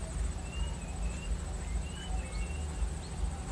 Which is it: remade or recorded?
recorded